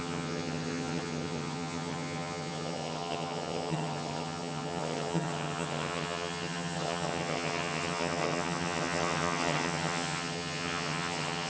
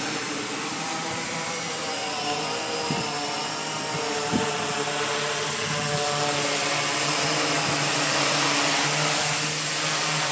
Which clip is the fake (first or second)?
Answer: first